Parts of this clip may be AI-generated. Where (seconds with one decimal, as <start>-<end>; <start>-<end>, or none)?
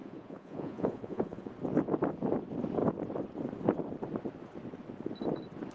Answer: 0.0-1.5